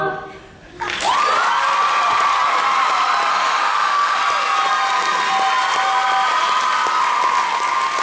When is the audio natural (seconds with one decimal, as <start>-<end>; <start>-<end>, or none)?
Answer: 0.0-3.3; 4.2-8.0